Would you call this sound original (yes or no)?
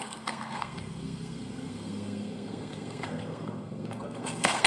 no